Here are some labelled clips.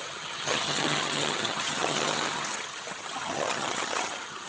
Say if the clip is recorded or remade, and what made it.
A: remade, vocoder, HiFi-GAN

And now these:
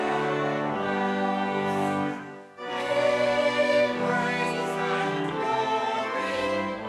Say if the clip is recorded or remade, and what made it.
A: remade, codec, DAC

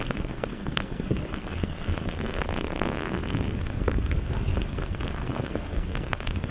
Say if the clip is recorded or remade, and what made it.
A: remade, codec, SNAC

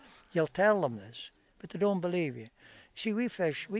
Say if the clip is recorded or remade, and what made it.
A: recorded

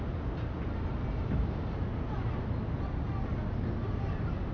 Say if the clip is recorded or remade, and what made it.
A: recorded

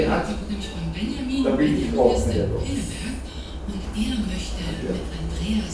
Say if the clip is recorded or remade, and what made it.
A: recorded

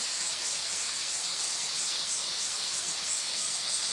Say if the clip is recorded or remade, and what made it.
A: remade, codec, SNAC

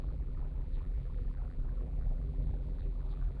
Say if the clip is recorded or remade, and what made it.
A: remade, vocoder, BigVGAN v2